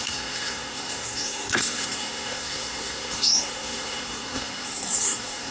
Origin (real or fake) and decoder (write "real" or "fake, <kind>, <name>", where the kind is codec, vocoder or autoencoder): fake, codec, SNAC